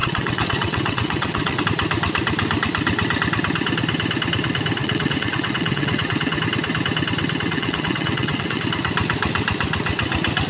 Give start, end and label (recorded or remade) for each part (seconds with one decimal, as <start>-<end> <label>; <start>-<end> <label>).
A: 0.0-1.6 remade; 1.6-4.8 recorded; 4.8-6.4 remade; 6.4-7.5 recorded; 7.5-8.6 remade; 8.6-10.5 recorded